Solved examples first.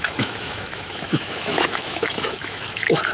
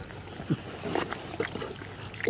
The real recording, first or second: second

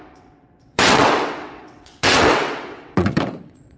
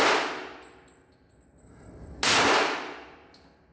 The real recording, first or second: second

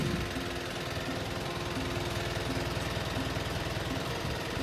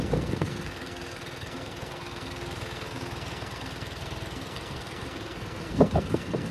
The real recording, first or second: first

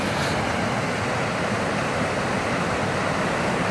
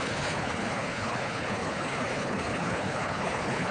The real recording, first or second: first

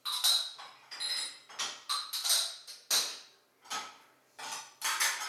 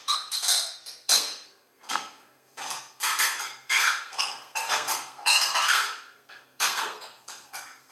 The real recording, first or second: first